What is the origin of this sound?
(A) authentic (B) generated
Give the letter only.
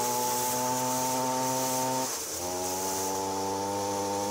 A